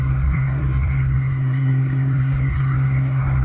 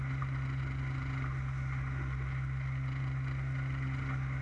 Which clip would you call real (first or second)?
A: second